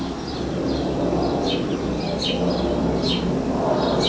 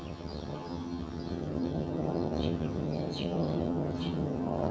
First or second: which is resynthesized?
second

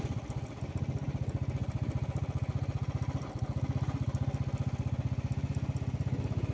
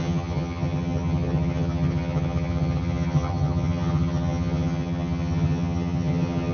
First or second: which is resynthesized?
second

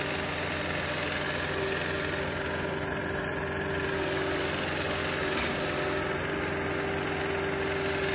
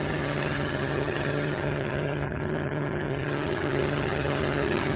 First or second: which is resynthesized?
second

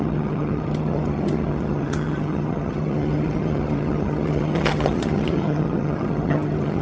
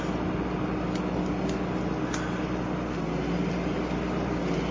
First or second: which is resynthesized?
first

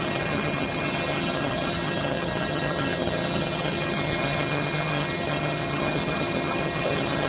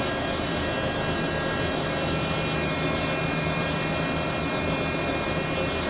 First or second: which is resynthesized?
first